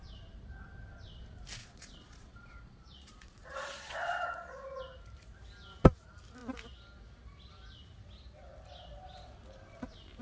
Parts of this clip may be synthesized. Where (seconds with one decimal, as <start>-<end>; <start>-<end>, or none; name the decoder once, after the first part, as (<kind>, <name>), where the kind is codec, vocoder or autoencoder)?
1.6-4.8 (vocoder, Vocos)